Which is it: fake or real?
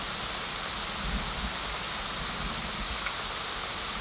real